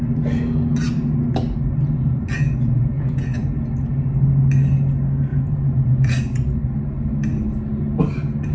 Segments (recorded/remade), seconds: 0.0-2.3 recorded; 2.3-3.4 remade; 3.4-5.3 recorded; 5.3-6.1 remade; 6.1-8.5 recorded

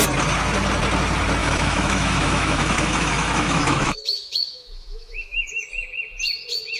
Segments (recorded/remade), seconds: 0.0-1.4 recorded; 1.4-5.5 remade; 5.5-6.8 recorded